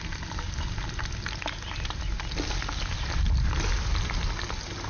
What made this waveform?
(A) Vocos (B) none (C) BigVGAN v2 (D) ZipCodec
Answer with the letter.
B